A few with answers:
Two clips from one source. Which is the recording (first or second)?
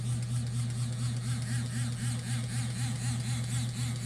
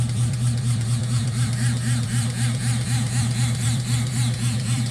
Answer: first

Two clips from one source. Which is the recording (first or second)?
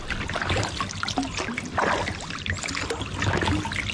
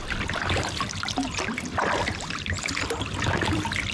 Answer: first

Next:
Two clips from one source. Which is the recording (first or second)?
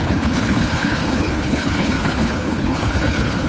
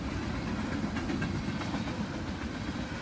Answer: second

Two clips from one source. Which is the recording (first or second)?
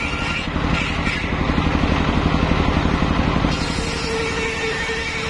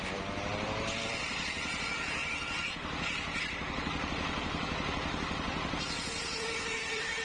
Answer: first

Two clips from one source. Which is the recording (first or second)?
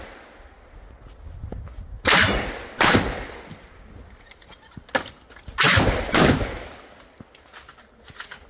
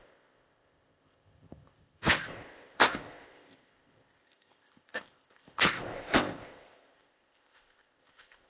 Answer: first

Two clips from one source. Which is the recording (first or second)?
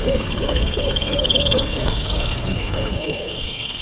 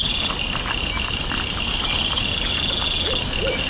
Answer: second